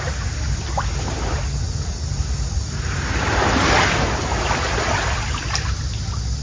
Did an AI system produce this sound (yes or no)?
no